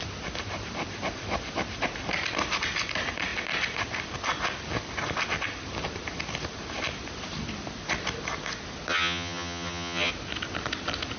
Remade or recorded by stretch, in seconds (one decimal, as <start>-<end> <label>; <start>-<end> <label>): 0.0-8.9 recorded; 8.9-10.1 remade; 10.1-11.2 recorded